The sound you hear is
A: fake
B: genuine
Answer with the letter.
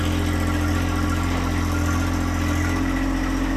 B